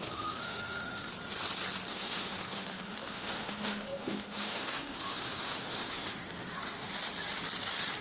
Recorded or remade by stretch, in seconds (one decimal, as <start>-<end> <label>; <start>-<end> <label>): 0.0-1.1 remade; 1.1-1.9 recorded; 1.9-6.9 remade; 6.9-8.0 recorded